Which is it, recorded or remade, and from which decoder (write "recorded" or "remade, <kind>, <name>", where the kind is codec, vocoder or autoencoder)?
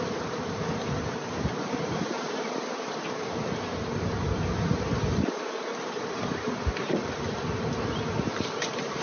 remade, vocoder, BigVGAN v2